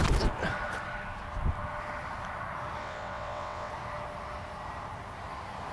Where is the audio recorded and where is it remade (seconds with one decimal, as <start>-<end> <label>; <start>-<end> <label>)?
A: 0.0-2.8 recorded; 2.8-3.7 remade; 3.7-5.7 recorded